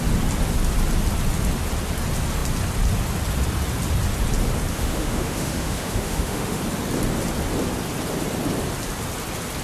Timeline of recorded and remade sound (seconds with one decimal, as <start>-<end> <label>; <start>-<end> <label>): 0.0-4.7 recorded; 4.7-6.6 remade; 6.6-9.6 recorded